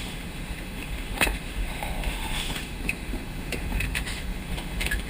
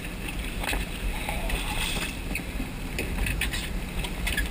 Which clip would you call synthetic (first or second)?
first